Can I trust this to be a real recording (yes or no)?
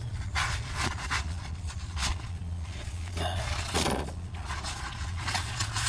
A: no